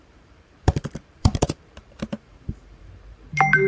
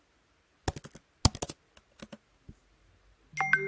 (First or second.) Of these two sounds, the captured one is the second